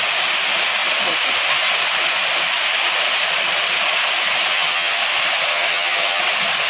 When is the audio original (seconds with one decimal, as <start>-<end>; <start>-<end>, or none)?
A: 0.0-4.5; 5.0-5.5; 6.2-6.7

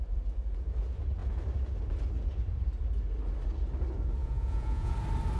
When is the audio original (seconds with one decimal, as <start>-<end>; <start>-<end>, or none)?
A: 0.0-4.2; 4.9-5.4

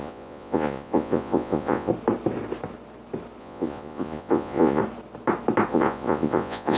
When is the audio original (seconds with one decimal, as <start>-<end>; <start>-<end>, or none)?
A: 1.9-3.4; 4.8-5.7

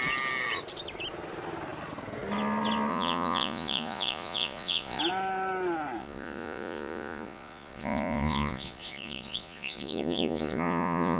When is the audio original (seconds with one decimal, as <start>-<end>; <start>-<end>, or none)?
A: 0.0-2.9; 5.0-6.0

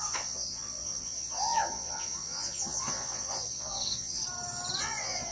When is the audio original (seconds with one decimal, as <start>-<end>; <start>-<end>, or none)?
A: 4.2-4.8

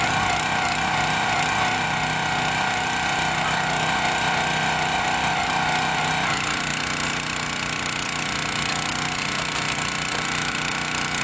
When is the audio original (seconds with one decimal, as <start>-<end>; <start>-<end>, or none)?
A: 0.0-11.2

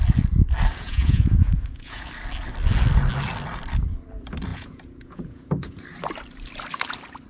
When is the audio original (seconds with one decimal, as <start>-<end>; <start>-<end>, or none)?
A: 0.0-0.7; 2.1-4.5; 5.8-7.3